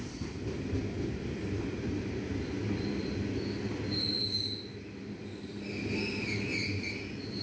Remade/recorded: recorded